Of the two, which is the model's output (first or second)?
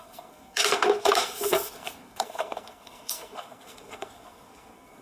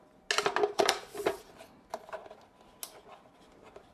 first